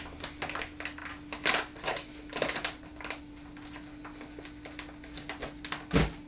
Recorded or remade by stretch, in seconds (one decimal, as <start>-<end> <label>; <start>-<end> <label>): 0.0-6.3 recorded